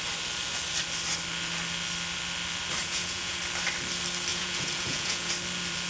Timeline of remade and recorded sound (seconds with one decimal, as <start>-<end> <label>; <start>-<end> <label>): 0.0-2.8 recorded; 2.8-3.4 remade; 3.4-4.3 recorded; 4.3-5.3 remade; 5.3-5.9 recorded